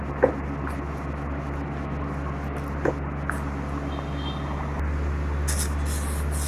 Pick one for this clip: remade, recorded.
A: recorded